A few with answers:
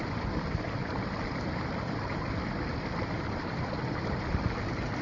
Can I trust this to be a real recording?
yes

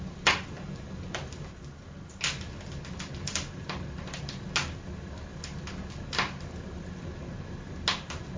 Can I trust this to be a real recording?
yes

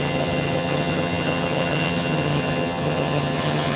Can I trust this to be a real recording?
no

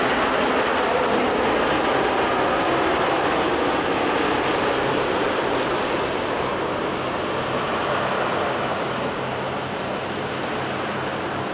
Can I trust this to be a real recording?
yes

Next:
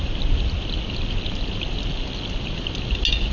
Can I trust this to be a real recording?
yes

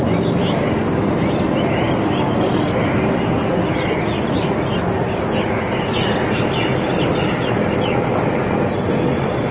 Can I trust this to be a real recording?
yes